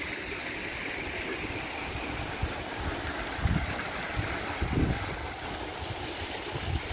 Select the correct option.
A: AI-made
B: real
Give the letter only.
B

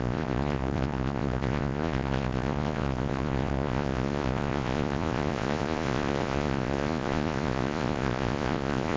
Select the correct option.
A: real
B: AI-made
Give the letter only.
B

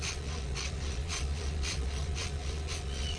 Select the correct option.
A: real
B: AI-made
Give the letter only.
B